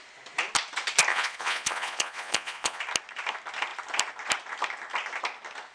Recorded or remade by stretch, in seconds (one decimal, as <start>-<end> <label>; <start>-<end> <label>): 0.0-1.1 recorded; 1.1-2.8 remade; 2.8-5.7 recorded

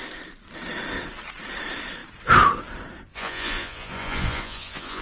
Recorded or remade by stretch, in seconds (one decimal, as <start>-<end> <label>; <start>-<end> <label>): 0.0-3.1 recorded; 3.1-5.0 remade

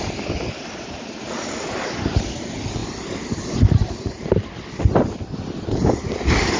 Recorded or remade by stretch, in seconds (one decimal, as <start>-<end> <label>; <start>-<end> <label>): 0.0-6.6 recorded

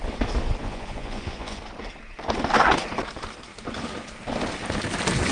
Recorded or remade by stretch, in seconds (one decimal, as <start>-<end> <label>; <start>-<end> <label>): 0.0-0.6 recorded; 0.6-1.6 remade; 1.6-5.3 recorded

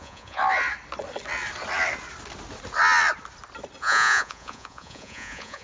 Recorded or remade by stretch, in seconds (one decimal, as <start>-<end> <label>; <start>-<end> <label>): 0.0-0.4 remade; 0.4-3.8 recorded; 3.8-5.6 remade

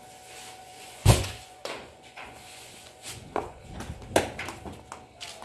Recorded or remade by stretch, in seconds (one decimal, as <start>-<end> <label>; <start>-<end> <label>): 0.0-0.6 recorded; 0.6-3.8 remade; 3.8-5.4 recorded

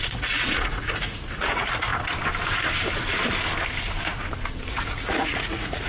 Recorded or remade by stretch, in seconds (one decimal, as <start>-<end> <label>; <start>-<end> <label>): 0.0-1.9 remade; 1.9-4.7 recorded; 4.7-5.9 remade

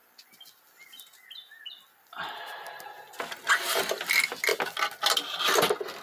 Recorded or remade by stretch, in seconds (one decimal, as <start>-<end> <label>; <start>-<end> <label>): 0.0-6.0 recorded